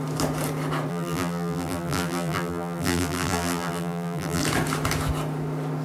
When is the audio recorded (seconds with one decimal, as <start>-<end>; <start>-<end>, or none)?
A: 0.0-0.9; 4.4-5.8